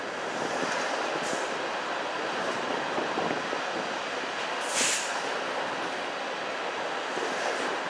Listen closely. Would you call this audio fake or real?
real